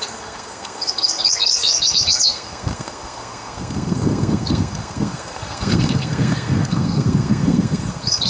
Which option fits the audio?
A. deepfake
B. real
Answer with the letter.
A